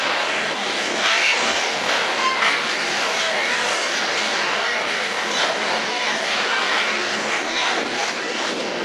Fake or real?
fake